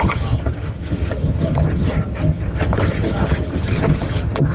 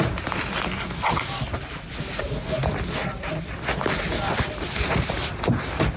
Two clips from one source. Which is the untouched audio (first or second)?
second